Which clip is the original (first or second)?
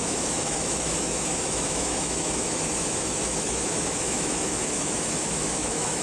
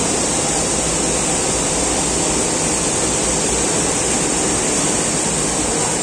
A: second